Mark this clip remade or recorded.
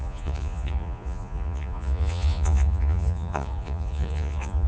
remade